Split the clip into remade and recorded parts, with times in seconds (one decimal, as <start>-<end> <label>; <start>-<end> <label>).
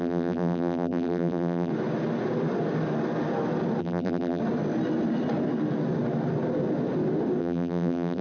0.0-1.7 remade; 1.7-3.8 recorded; 3.8-4.4 remade; 4.4-7.4 recorded; 7.4-8.2 remade